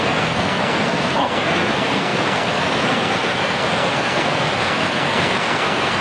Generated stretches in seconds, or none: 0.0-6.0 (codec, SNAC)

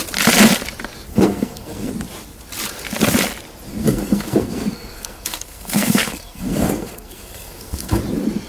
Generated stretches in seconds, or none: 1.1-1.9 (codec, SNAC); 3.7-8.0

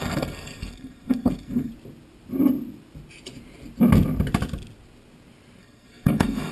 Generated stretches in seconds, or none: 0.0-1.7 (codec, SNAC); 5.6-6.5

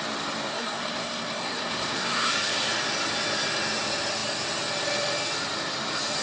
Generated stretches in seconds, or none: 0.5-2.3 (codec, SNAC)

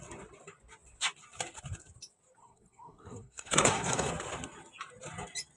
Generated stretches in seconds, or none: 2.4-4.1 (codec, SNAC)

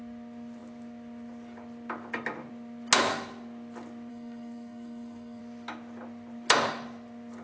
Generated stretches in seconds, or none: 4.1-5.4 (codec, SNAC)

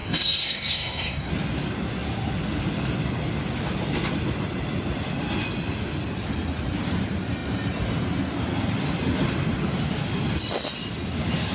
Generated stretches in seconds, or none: 0.0-1.3 (codec, SNAC)

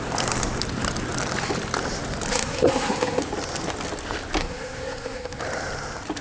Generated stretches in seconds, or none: 2.3-3.2 (codec, SNAC); 4.4-5.4